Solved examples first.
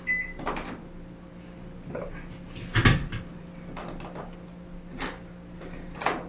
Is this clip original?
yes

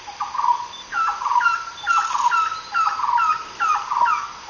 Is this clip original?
yes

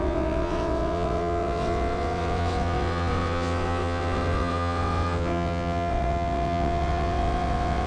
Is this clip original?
no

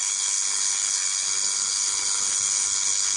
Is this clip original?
no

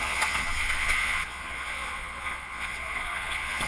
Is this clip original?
no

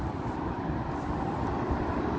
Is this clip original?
yes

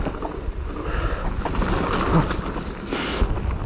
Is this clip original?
yes